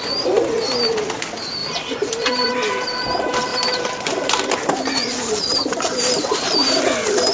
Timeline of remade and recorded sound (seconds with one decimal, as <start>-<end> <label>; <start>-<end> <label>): 0.0-1.6 recorded; 1.6-2.5 remade; 2.5-3.5 recorded; 3.5-6.8 remade; 6.8-7.3 recorded